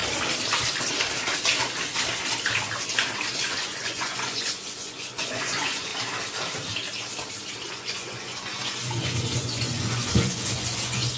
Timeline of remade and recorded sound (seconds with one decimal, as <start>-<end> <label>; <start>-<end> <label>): 0.0-3.4 recorded; 3.4-5.9 remade; 5.9-7.7 recorded; 7.7-11.2 remade